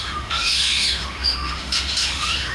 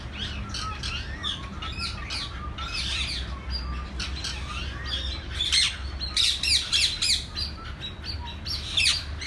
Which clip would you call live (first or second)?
second